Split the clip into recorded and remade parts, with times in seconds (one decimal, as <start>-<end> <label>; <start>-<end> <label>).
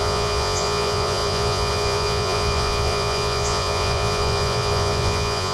0.0-5.5 remade